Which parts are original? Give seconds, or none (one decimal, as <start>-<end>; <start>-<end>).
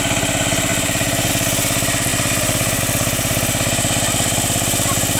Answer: 0.0-0.7; 1.3-2.1; 2.8-5.2